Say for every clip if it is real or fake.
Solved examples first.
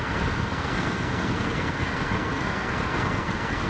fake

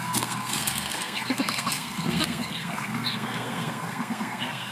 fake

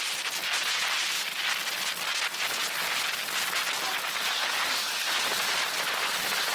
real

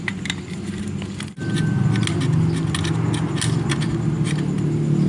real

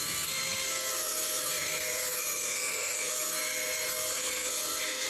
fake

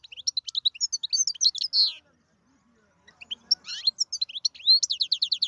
real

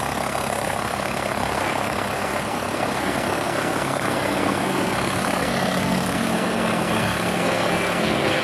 fake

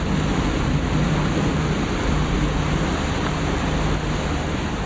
real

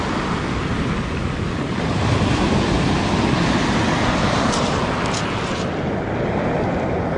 real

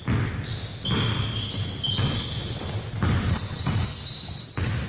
real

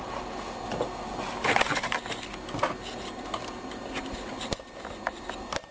real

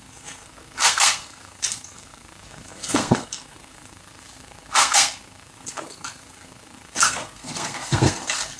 fake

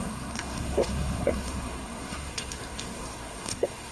fake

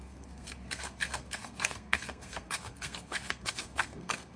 fake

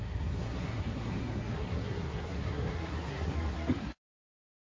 fake